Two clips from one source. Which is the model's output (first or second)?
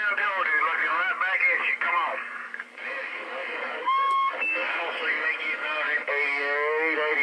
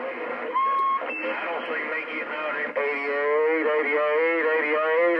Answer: first